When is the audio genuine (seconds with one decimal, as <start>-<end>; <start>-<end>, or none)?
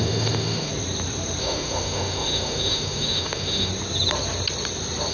0.7-1.4; 3.7-5.1